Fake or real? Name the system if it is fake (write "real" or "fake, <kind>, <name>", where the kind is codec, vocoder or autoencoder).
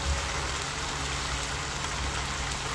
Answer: real